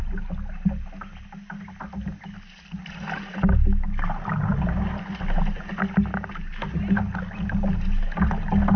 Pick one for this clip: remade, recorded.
recorded